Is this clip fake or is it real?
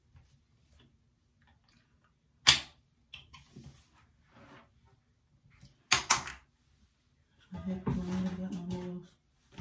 real